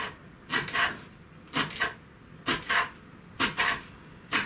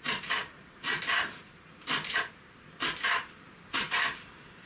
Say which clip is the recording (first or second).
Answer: first